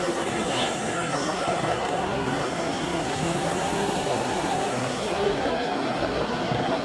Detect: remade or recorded remade